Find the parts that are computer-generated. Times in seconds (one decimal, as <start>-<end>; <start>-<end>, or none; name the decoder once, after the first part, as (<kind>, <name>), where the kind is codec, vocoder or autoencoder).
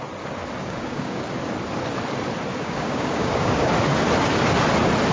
0.6-1.2 (codec, DAC); 2.5-3.7